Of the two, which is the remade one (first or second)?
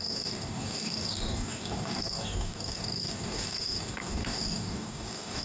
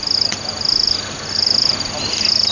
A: first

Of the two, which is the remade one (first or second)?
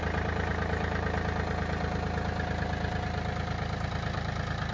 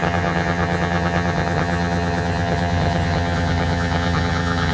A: second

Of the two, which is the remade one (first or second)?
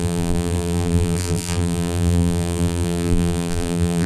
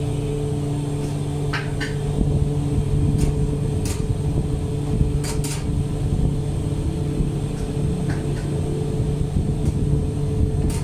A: first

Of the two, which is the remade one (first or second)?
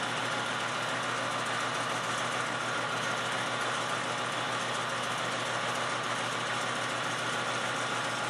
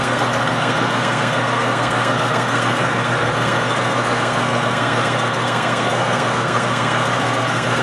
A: second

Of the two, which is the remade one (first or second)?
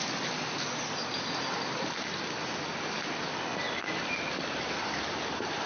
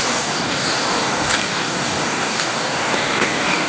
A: second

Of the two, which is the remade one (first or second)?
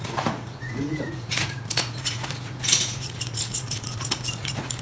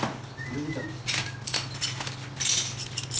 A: first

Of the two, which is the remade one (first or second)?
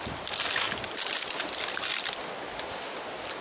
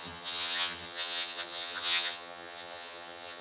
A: second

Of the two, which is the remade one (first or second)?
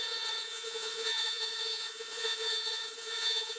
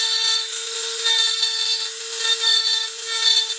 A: first